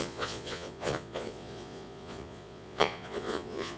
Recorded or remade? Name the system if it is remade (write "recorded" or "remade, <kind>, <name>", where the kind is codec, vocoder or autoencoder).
remade, vocoder, Vocos